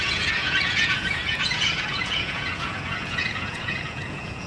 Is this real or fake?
fake